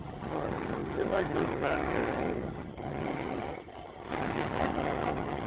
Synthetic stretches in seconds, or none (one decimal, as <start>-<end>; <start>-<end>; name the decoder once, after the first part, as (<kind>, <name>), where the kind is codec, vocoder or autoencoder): 0.0-5.5 (vocoder, HiFi-GAN)